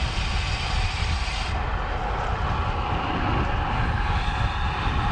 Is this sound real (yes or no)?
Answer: yes